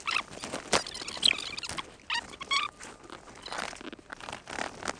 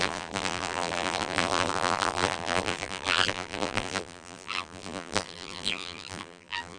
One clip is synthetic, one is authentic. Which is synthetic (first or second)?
second